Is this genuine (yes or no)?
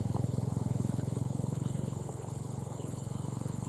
no